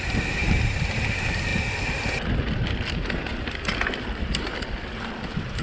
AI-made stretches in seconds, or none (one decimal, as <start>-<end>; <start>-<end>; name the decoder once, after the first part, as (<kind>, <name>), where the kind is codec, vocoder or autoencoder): 0.4-1.0 (vocoder, BigVGAN v2)